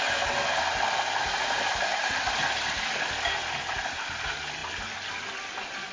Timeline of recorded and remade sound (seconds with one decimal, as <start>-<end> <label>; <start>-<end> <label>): 0.0-5.9 recorded